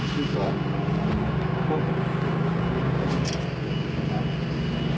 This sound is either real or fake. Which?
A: real